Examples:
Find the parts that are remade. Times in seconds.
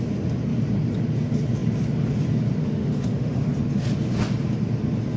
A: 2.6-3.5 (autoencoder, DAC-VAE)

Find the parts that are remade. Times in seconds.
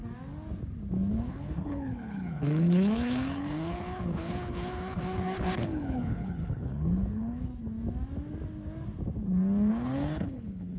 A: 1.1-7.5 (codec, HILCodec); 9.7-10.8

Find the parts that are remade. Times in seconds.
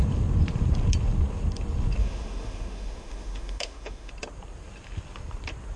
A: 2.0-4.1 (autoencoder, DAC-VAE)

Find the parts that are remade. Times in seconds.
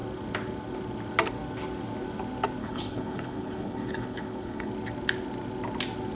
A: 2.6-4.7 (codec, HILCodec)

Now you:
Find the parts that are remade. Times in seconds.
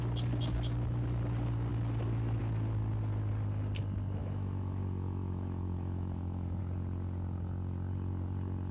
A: 4.2-6.6 (autoencoder, DAC-VAE)